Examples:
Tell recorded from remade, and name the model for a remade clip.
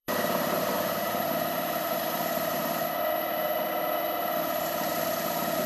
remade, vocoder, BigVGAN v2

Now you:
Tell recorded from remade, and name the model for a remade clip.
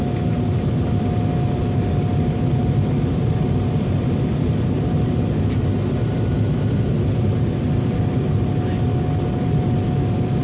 recorded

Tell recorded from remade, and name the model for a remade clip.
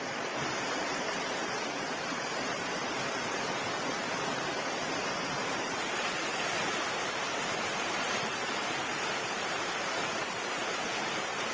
remade, vocoder, BigVGAN v2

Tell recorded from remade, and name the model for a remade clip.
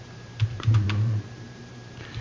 remade, vocoder, BigVGAN v2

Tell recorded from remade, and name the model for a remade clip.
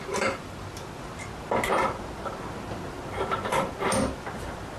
recorded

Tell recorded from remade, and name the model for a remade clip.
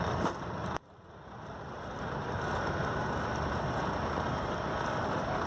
remade, vocoder, BigVGAN v2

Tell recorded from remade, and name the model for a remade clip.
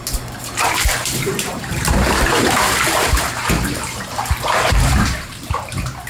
remade, vocoder, BigVGAN v2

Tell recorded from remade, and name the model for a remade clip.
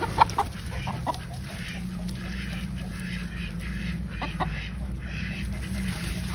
remade, vocoder, BigVGAN v2